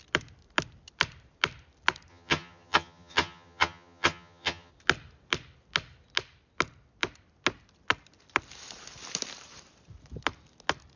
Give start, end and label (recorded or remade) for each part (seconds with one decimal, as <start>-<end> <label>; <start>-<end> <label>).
0.0-2.1 recorded; 2.1-4.7 remade; 4.7-11.0 recorded